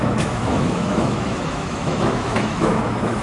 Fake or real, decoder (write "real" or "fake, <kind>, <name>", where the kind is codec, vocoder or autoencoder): fake, autoencoder, DAC-VAE